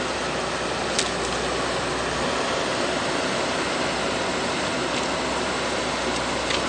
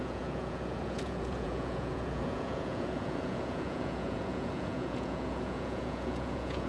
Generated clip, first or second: second